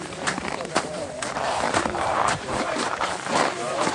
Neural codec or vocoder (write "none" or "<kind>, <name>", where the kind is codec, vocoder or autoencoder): vocoder, BigVGAN v2